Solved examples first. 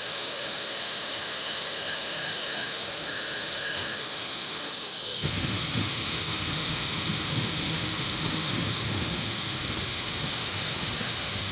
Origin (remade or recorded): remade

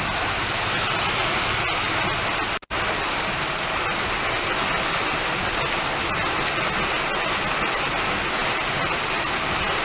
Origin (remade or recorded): recorded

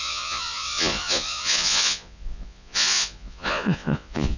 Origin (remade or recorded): remade